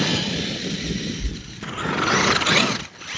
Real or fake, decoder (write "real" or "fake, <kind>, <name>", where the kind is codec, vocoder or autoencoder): real